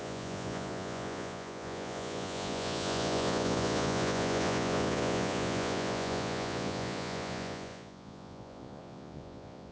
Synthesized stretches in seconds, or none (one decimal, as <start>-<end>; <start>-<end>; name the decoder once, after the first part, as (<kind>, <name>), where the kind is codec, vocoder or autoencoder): 0.0-9.7 (vocoder, Vocos)